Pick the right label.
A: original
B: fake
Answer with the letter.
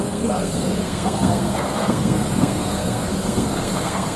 B